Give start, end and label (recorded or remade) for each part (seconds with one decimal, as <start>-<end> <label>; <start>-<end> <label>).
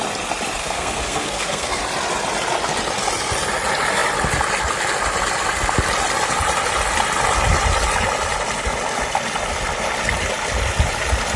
0.0-0.6 recorded; 0.6-1.8 remade; 1.8-11.4 recorded